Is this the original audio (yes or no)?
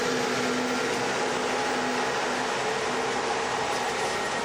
yes